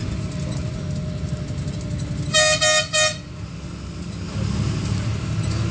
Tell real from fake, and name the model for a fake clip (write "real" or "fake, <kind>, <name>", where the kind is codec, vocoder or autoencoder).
real